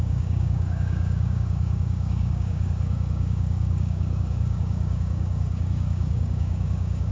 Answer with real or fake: fake